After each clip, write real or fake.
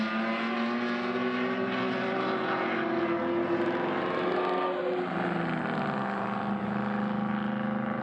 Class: real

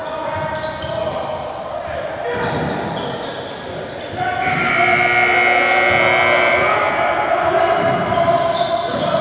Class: real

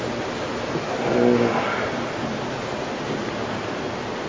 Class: real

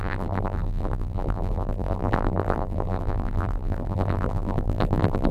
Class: fake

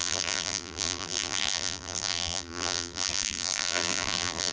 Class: fake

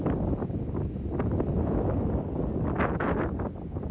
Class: real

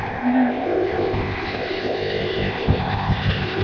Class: fake